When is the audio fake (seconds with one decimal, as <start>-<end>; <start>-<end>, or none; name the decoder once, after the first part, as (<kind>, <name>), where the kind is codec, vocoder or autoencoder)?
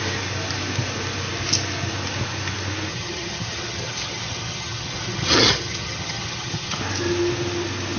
2.9-6.8 (vocoder, HiFi-GAN)